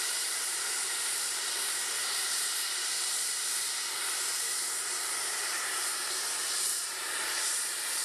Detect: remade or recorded remade